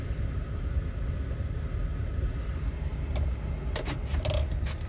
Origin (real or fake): real